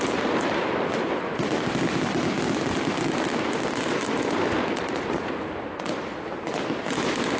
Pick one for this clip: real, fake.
real